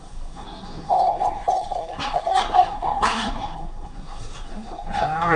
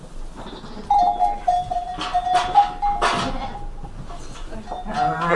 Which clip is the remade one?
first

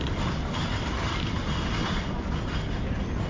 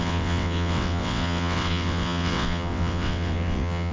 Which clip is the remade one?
second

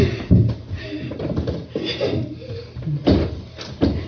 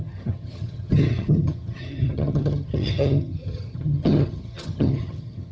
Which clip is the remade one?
second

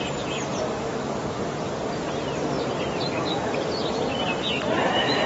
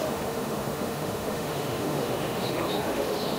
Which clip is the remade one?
second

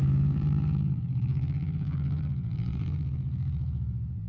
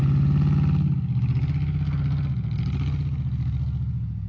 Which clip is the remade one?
first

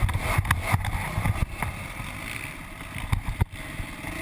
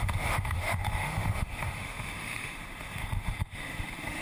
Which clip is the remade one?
second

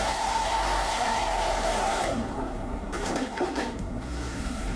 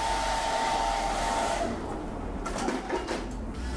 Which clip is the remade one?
first